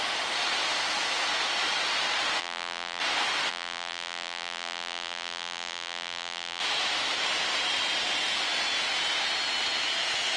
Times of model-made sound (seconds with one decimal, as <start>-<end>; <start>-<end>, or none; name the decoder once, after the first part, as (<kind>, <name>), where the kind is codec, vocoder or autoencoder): 2.4-3.0 (vocoder, BigVGAN v2); 3.5-6.6